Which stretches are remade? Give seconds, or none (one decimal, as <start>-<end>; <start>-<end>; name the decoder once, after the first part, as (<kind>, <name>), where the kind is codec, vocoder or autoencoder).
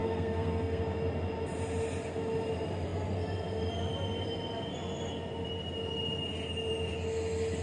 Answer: 0.0-0.8 (codec, SNAC)